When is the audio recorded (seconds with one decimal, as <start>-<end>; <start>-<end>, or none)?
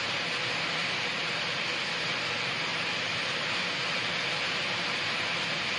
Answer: 0.0-0.8; 1.4-2.7; 4.1-5.8